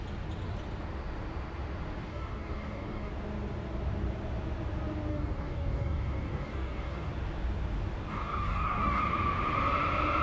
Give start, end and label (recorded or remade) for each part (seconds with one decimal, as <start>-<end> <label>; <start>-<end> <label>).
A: 0.0-2.1 recorded; 2.1-3.1 remade; 3.1-5.1 recorded; 5.1-7.1 remade; 7.1-8.1 recorded; 8.1-9.0 remade; 9.0-10.2 recorded